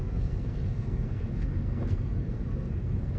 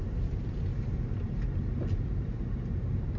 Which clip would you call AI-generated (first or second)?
first